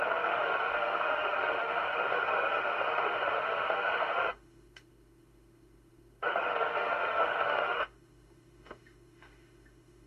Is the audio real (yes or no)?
no